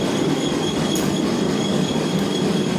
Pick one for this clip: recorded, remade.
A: remade